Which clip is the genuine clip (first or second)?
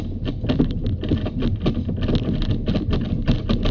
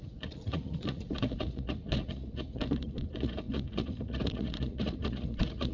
first